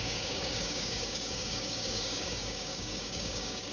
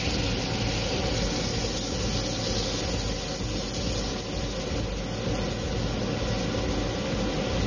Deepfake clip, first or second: first